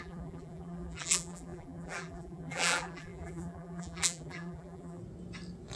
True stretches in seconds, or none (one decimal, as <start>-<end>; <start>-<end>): 5.0-5.8